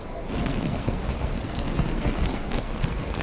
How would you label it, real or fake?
fake